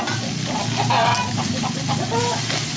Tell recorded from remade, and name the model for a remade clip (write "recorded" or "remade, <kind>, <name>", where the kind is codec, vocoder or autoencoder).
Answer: recorded